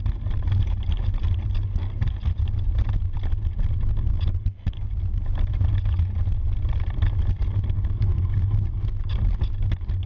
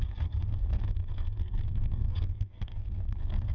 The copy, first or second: second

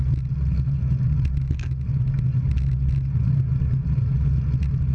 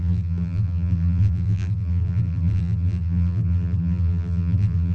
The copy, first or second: second